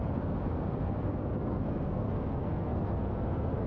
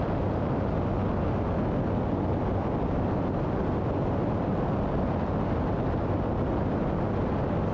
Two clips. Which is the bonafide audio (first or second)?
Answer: second